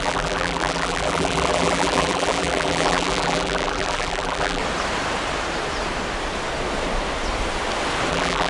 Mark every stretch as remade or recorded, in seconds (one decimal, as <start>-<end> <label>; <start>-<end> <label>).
0.0-4.6 remade; 4.6-8.1 recorded; 8.1-8.5 remade